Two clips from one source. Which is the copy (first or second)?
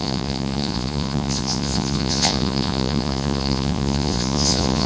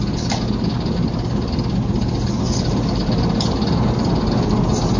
first